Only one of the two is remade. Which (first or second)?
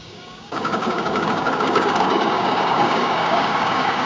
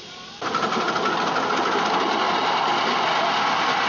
first